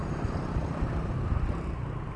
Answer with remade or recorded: recorded